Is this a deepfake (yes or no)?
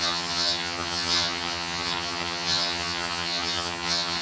yes